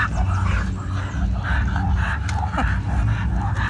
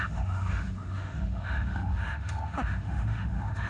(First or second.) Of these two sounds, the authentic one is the first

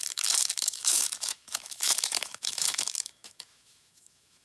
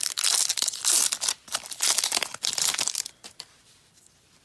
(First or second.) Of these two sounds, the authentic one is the second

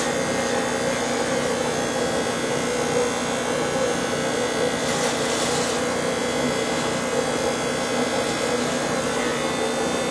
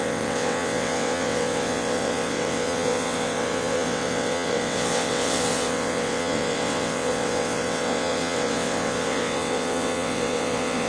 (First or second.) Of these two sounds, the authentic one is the first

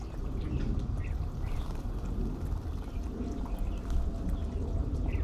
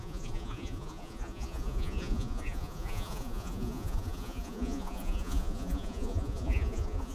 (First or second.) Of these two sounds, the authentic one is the first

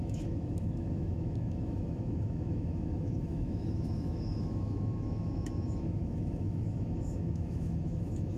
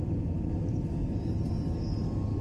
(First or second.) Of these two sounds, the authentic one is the second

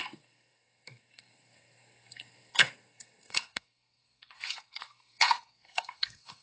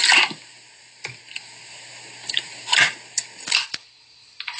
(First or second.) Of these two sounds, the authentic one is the second